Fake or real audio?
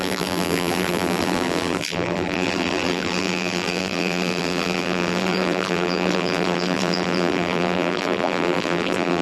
fake